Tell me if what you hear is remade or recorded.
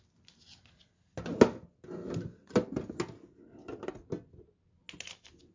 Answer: recorded